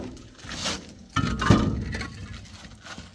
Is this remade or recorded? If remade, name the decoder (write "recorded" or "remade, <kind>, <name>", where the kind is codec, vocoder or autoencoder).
recorded